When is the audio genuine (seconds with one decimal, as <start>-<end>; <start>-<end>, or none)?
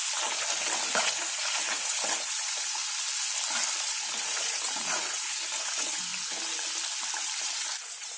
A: 0.0-1.0; 2.8-3.8; 6.1-7.4